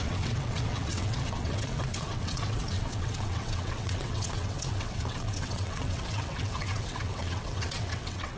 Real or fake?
fake